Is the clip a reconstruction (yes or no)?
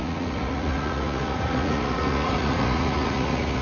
yes